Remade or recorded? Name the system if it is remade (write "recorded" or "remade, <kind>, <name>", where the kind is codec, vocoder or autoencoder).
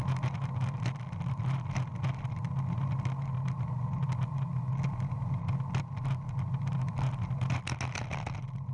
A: recorded